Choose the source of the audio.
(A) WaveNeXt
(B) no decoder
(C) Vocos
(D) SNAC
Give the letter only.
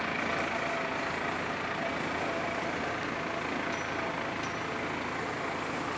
B